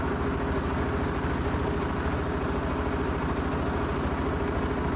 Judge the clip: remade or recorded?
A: recorded